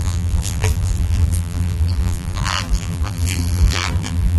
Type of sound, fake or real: fake